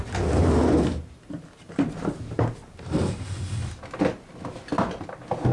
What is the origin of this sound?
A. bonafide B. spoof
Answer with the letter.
A